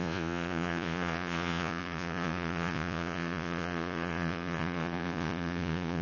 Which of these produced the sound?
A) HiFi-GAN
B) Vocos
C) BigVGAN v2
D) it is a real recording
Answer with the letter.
B